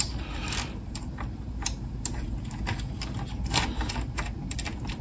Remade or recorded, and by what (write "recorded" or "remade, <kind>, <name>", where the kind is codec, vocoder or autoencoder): recorded